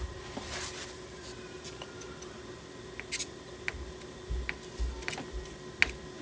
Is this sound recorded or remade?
recorded